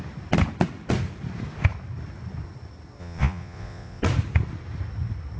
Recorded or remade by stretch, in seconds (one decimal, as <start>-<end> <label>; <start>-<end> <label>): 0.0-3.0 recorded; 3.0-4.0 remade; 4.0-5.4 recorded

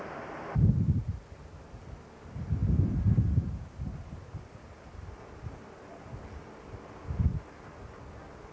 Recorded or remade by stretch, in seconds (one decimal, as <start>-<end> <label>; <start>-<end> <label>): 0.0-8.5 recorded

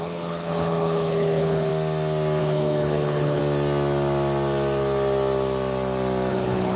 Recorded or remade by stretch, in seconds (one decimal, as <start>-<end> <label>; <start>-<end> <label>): 0.0-1.7 remade; 1.7-2.4 recorded; 2.4-3.4 remade; 3.4-6.3 recorded; 6.3-6.8 remade

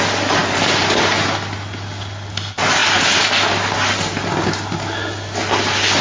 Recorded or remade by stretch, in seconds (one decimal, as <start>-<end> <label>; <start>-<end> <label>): 0.0-6.0 recorded

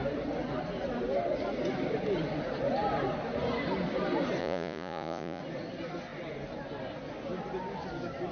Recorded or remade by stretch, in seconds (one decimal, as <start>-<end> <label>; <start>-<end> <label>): 0.0-4.4 recorded; 4.4-5.4 remade; 5.4-8.3 recorded

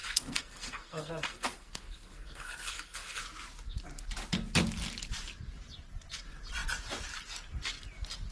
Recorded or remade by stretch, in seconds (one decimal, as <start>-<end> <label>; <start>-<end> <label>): 0.0-3.2 remade; 3.2-8.3 recorded